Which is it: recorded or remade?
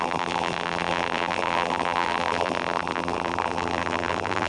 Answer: remade